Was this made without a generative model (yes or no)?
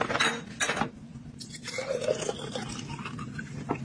yes